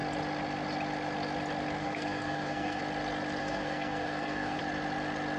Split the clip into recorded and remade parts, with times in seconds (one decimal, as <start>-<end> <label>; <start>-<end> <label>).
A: 0.0-1.8 recorded; 1.8-2.8 remade; 2.8-3.4 recorded; 3.4-4.6 remade; 4.6-5.4 recorded

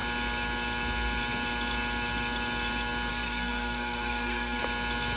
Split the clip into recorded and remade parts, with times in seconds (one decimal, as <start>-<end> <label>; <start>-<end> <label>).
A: 0.0-3.1 recorded; 3.1-4.6 remade; 4.6-5.2 recorded

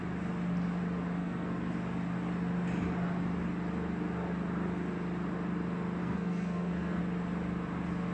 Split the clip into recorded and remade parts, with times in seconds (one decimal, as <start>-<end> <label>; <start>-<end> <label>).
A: 0.0-1.2 recorded; 1.2-1.7 remade; 1.7-6.0 recorded; 6.0-7.0 remade; 7.0-8.1 recorded

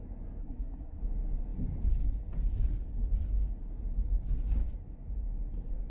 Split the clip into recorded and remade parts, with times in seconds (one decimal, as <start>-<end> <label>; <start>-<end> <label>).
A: 0.0-0.4 recorded; 0.4-1.0 remade; 1.0-5.9 recorded

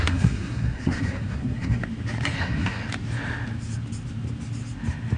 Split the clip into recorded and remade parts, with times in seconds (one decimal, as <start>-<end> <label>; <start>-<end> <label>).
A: 0.0-1.8 remade; 1.8-2.4 recorded; 2.4-2.8 remade; 2.8-5.2 recorded

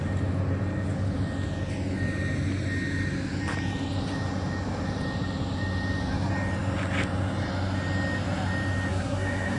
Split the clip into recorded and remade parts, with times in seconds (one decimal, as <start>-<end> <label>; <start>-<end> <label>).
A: 0.0-8.9 recorded; 8.9-9.6 remade

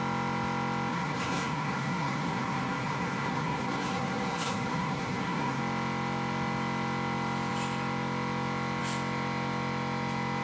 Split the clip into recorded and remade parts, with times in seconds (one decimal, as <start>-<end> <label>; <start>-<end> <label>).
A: 0.0-0.9 recorded; 0.9-5.6 remade; 5.6-10.4 recorded

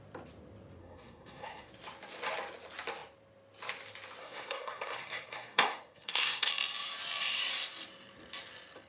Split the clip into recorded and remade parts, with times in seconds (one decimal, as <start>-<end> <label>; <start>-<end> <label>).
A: 0.0-0.8 recorded; 0.8-1.7 remade; 1.7-4.2 recorded; 4.2-6.5 remade; 6.5-8.9 recorded